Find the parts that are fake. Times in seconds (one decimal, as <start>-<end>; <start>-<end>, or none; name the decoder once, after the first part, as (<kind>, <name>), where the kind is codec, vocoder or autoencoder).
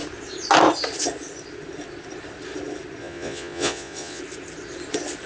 3.0-4.2 (vocoder, Vocos)